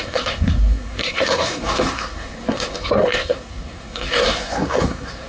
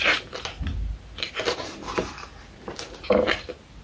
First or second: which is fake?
first